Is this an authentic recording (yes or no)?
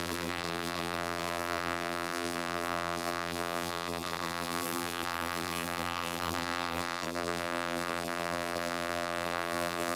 no